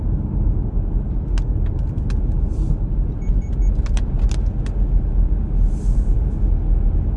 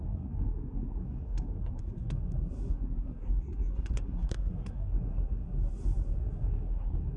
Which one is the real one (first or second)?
first